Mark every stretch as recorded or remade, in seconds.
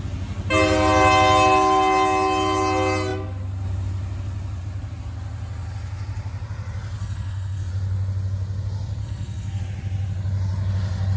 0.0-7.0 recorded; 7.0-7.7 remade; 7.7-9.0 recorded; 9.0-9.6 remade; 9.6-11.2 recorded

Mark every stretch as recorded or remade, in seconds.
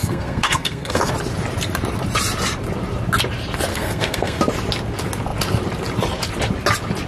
0.0-1.1 remade; 1.1-3.7 recorded; 3.7-4.4 remade; 4.4-7.1 recorded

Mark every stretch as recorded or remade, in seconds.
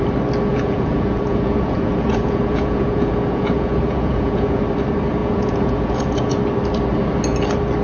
0.0-0.5 recorded; 0.5-4.6 remade; 4.6-5.2 recorded; 5.2-6.4 remade; 6.4-7.8 recorded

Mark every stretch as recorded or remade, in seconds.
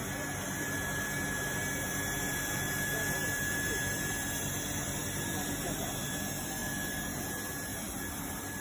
0.0-2.2 recorded; 2.2-6.6 remade; 6.6-7.3 recorded; 7.3-8.6 remade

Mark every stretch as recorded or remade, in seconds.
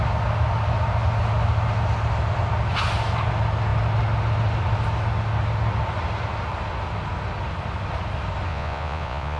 0.0-8.5 recorded; 8.5-9.4 remade